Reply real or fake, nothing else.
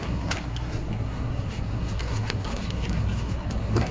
fake